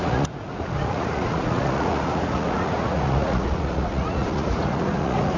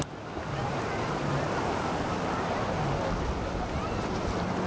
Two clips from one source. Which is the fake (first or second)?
first